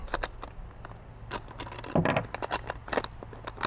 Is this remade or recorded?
recorded